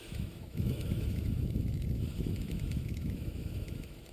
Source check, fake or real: fake